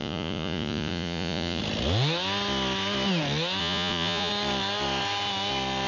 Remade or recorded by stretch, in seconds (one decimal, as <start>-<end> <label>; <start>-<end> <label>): 0.0-1.6 remade; 1.6-3.6 recorded; 3.6-4.3 remade; 4.3-5.9 recorded